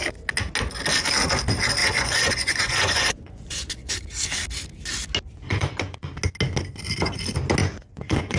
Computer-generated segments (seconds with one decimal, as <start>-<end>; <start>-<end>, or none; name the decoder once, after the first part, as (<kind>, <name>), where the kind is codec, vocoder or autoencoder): 1.8-3.9 (vocoder, Vocos); 5.5-6.1; 7.6-8.4